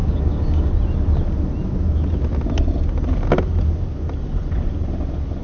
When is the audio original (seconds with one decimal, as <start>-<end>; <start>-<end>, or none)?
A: 0.7-5.4

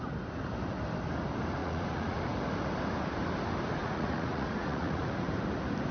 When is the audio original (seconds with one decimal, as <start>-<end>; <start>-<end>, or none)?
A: 0.0-1.6; 2.2-3.8; 5.3-5.9

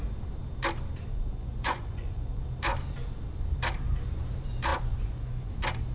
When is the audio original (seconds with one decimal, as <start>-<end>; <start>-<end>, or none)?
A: 0.0-1.1; 2.4-4.7; 5.5-5.9